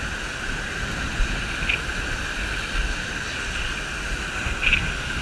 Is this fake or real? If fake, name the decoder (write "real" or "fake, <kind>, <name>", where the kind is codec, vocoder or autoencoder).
real